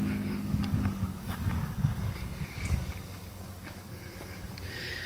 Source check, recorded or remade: remade